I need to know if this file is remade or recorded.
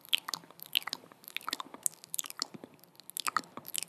recorded